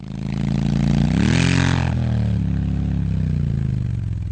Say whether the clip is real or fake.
real